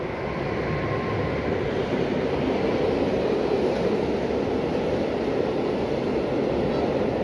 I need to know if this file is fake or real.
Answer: real